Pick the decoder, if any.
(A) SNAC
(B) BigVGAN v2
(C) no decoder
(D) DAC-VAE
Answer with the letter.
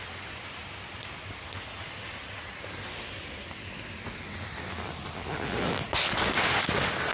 C